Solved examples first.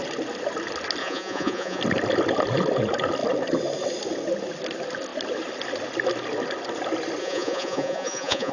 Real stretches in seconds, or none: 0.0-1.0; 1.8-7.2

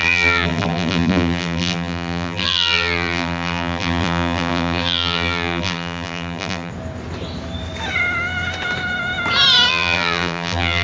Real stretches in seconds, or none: 6.7-9.7

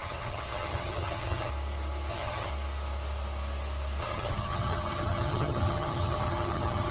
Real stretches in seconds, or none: 1.5-2.1; 2.5-4.0

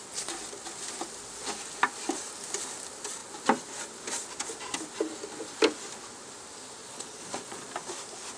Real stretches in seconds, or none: 0.0-6.8; 7.7-8.4